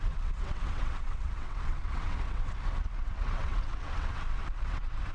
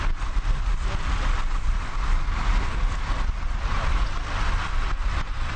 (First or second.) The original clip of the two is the second